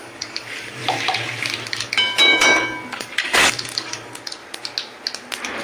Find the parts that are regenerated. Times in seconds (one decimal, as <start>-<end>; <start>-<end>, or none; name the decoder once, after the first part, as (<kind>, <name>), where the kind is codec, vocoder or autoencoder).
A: 0.0-0.8 (codec, DAC); 1.7-4.4